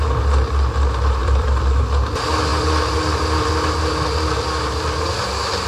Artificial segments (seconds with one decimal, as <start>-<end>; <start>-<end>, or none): 1.2-1.8

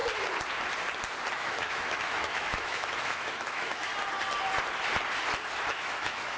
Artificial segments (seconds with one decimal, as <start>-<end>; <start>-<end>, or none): 1.3-3.9; 5.7-6.4

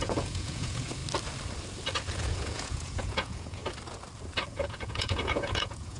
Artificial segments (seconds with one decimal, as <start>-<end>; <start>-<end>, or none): 0.0-1.0; 2.2-3.6; 4.5-6.0

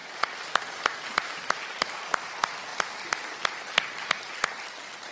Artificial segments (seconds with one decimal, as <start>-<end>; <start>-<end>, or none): 0.0-2.2

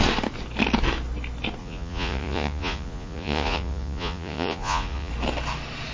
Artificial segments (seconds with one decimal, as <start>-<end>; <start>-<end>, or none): 1.6-5.1